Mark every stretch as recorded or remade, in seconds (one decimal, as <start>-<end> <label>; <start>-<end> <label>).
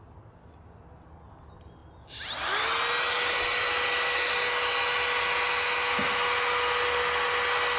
0.0-7.8 recorded